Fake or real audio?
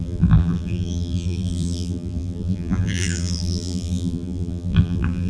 fake